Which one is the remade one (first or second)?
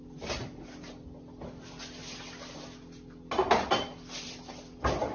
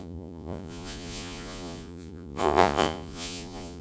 second